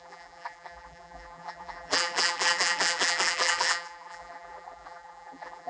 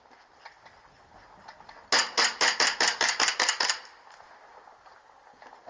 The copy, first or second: first